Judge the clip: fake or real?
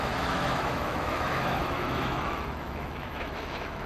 fake